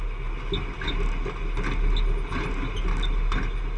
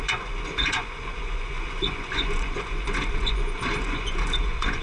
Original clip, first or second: first